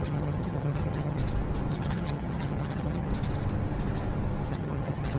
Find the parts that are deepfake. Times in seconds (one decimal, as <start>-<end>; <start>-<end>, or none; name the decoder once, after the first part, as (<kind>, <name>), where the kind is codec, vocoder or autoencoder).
0.0-1.2 (vocoder, HiFi-GAN); 1.7-3.1; 4.5-5.2